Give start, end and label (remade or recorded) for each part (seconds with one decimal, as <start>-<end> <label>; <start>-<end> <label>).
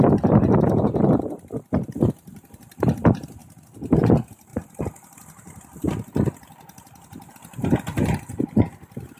0.0-9.2 recorded